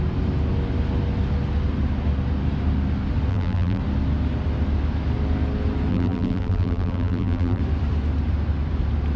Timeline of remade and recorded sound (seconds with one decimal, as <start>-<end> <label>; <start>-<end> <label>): 0.0-3.3 recorded; 3.3-3.8 remade; 3.8-5.9 recorded; 5.9-7.6 remade; 7.6-9.2 recorded